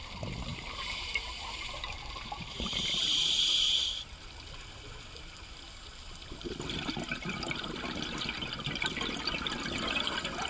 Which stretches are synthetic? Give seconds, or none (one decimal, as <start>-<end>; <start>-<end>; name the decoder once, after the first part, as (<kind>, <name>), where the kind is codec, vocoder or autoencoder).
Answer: 0.5-3.8 (vocoder, BigVGAN v2)